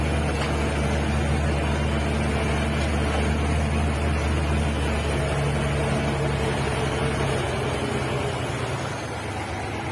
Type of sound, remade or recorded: recorded